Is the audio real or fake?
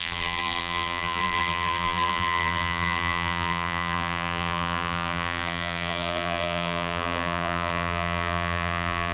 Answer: fake